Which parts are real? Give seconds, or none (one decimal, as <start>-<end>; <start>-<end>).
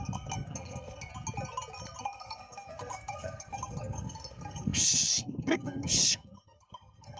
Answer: 1.1-2.0